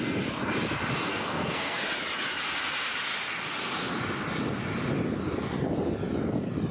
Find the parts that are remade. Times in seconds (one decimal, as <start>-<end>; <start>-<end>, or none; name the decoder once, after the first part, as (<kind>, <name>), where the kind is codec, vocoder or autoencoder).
1.1-1.8 (codec, SNAC)